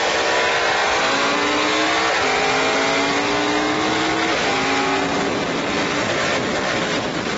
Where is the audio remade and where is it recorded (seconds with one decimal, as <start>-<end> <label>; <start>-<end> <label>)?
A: 0.0-7.4 recorded